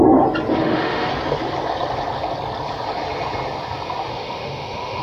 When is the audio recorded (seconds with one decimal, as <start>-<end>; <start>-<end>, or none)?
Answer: 0.0-0.6; 1.1-4.1